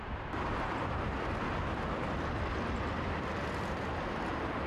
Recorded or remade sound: recorded